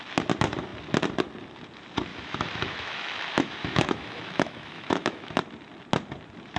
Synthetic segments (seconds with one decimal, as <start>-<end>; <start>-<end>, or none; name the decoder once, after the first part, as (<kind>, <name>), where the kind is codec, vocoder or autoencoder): 2.1-5.3 (autoencoder, DAC-VAE)

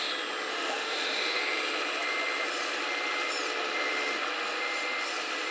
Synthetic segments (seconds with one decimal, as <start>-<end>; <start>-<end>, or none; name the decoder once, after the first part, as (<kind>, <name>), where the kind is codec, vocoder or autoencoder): 0.5-1.4 (autoencoder, DAC-VAE)

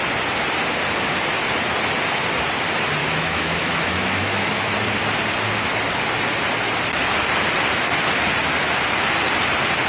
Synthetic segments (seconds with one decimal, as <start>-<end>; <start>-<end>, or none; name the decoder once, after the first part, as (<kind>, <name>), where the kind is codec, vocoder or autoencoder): 3.0-4.5 (autoencoder, DAC-VAE)

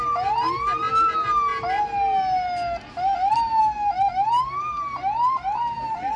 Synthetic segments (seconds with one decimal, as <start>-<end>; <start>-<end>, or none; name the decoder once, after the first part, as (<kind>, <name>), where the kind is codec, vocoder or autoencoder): none

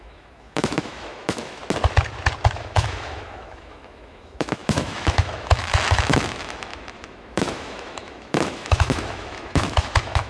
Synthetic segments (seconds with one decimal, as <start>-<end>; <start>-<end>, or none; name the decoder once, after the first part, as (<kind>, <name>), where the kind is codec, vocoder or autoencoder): 0.0-1.6 (autoencoder, DAC-VAE); 2.6-10.3

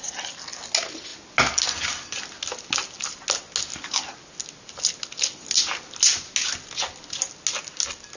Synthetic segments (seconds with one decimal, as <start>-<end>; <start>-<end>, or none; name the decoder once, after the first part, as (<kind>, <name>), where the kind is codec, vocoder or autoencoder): none